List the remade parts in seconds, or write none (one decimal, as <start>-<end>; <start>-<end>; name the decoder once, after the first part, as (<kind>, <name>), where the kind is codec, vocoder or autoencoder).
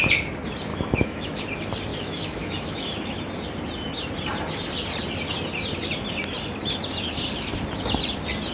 0.7-1.4 (autoencoder, DAC-VAE); 1.9-3.2